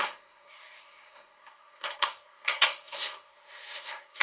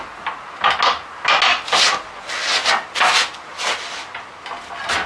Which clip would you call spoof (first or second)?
first